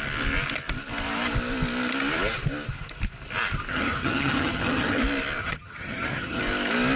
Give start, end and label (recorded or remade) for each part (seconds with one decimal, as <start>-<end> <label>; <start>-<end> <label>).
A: 0.0-3.7 recorded; 3.7-5.0 remade; 5.0-5.4 recorded; 5.4-6.4 remade; 6.4-7.0 recorded